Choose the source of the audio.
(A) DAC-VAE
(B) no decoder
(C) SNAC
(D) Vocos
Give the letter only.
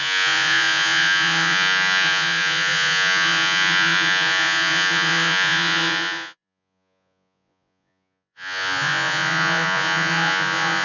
D